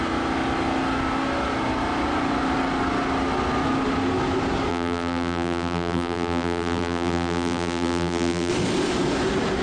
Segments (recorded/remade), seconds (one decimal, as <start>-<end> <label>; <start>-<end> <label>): 0.0-4.7 recorded; 4.7-8.5 remade; 8.5-9.6 recorded